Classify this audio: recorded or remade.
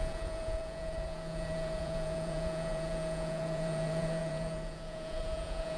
remade